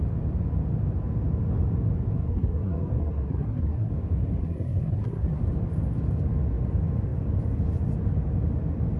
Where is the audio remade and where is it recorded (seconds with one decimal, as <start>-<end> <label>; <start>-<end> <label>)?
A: 0.0-2.2 recorded; 2.2-3.9 remade; 3.9-4.4 recorded; 4.4-5.4 remade; 5.4-9.0 recorded